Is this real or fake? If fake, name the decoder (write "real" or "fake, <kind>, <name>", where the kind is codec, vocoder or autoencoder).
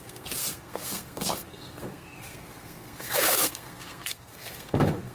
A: fake, codec, SNAC